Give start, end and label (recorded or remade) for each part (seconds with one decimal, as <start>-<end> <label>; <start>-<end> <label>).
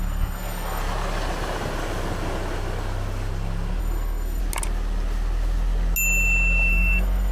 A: 0.0-0.8 remade; 0.8-3.8 recorded; 3.8-4.4 remade; 4.4-6.7 recorded; 6.7-7.3 remade